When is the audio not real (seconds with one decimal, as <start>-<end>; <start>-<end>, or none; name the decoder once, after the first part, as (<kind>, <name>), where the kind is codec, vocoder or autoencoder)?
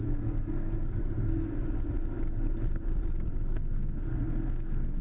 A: 0.0-1.5 (codec, SNAC); 3.3-5.0